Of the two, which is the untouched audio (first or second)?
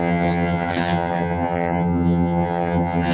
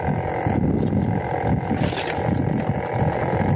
second